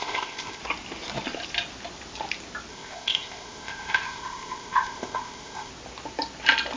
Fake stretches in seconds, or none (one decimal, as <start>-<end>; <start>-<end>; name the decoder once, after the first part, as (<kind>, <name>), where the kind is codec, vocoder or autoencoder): 0.0-0.6 (codec, ZipCodec); 2.7-5.7